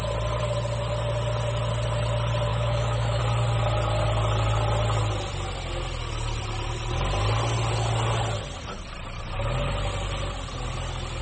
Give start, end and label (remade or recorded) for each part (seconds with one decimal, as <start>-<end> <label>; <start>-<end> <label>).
0.0-2.5 recorded; 2.5-3.2 remade; 3.2-11.2 recorded